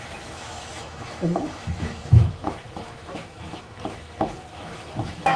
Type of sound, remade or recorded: remade